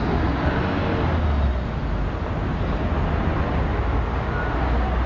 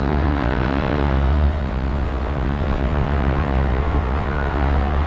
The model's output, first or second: second